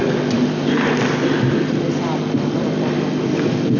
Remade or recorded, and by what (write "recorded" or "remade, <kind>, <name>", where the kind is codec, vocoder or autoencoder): remade, vocoder, BigVGAN v2